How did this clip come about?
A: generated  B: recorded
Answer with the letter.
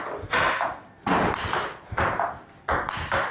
B